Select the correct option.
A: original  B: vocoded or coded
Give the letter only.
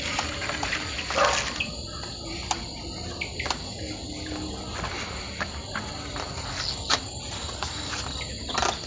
A